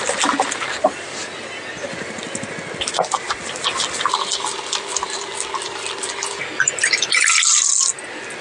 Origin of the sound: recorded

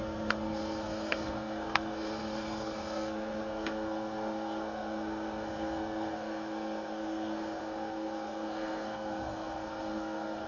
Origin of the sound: remade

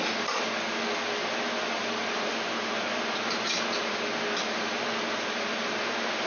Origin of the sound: recorded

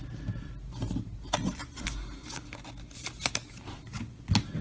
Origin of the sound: recorded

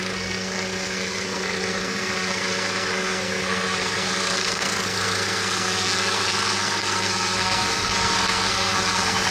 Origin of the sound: remade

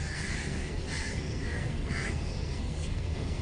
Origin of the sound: remade